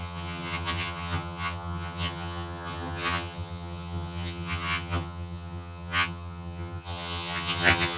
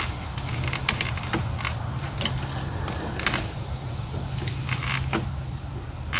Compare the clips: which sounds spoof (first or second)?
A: first